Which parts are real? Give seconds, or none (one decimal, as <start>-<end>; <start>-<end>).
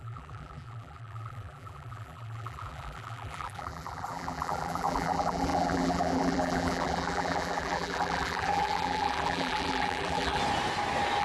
10.4-11.2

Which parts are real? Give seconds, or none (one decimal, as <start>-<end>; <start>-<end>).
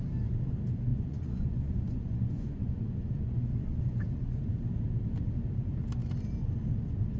0.0-0.9; 4.4-7.2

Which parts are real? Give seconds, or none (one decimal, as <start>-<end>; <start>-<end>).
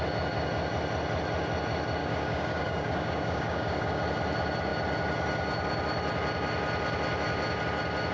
0.0-2.0; 4.0-8.1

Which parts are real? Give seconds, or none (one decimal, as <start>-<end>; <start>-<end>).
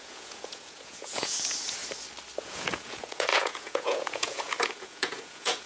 1.8-2.4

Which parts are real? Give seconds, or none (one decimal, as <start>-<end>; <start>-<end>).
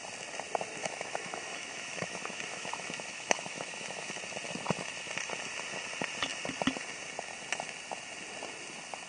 0.0-0.8; 4.2-9.1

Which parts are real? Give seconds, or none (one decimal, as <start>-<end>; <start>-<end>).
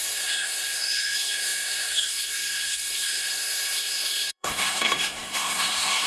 none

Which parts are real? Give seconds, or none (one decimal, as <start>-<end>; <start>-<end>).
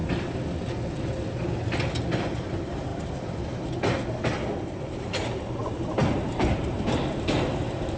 0.0-1.6; 2.9-4.8